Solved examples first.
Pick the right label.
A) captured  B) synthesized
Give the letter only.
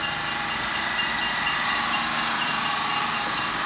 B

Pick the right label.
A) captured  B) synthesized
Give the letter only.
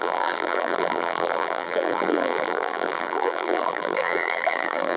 B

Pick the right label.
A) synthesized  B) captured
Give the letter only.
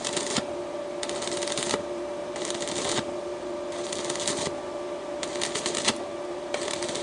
A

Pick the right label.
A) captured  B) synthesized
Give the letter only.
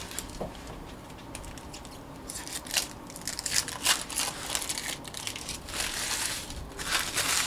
A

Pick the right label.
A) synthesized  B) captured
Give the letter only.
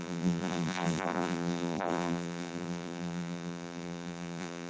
A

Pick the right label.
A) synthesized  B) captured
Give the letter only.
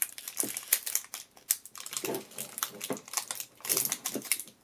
B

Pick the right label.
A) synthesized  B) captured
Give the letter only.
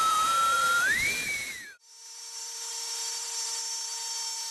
A